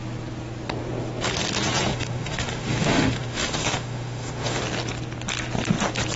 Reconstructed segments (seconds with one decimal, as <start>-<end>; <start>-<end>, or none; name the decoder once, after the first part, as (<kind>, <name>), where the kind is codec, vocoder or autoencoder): 1.9-4.6 (autoencoder, DAC-VAE)